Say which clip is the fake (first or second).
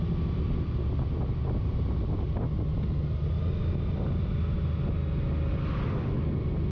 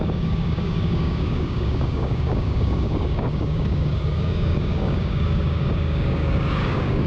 second